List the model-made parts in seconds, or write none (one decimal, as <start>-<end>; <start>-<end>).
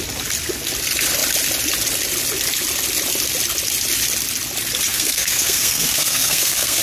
4.9-6.8